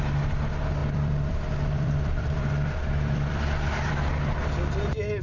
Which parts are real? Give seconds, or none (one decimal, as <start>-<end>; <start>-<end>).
0.0-0.8; 3.9-5.2